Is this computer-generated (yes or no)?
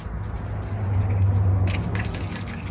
no